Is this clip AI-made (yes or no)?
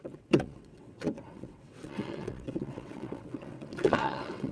yes